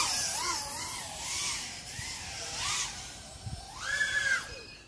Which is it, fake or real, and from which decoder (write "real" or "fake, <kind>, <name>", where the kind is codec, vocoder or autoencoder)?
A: fake, vocoder, BigVGAN v2